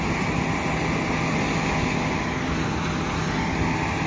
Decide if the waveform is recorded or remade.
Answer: recorded